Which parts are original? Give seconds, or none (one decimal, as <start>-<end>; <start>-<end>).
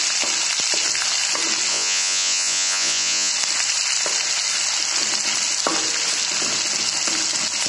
0.0-1.7; 3.3-7.7